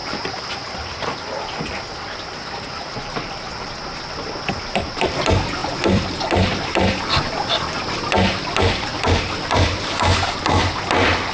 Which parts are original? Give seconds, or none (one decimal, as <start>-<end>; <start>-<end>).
0.0-5.6; 6.9-8.9; 10.4-11.3